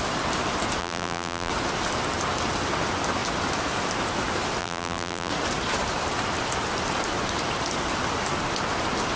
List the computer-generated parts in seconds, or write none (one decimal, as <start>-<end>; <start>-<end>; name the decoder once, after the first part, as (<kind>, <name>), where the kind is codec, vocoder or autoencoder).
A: 0.8-1.5 (vocoder, BigVGAN v2); 4.6-5.3